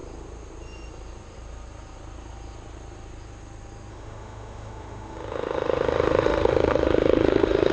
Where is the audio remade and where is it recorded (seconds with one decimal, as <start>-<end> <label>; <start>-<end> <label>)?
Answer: 0.0-3.9 recorded; 3.9-7.7 remade